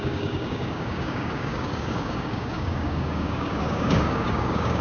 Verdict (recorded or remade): remade